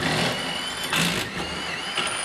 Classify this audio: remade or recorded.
recorded